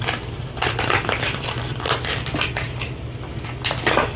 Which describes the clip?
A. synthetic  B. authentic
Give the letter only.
A